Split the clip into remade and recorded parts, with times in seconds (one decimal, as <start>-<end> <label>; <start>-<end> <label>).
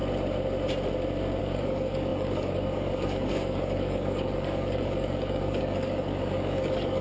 0.0-1.4 recorded; 1.4-7.0 remade